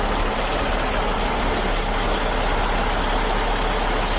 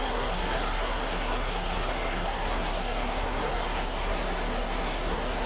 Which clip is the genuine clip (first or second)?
first